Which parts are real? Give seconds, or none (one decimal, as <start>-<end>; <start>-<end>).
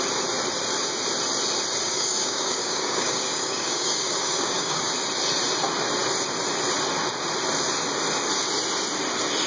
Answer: 0.0-1.8; 4.9-9.5